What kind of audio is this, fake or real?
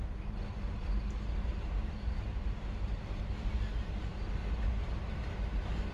fake